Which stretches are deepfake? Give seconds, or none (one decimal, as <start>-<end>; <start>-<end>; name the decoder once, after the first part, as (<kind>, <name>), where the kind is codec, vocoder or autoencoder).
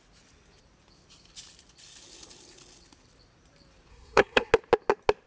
3.9-4.5 (codec, SNAC)